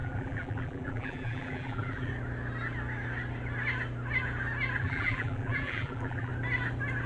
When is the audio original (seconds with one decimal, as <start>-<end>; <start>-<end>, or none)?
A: 2.1-4.8; 6.3-7.1